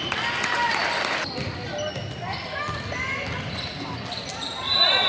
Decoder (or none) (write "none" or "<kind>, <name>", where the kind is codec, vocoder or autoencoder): none